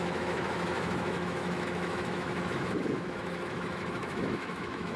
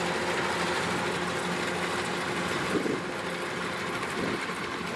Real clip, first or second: second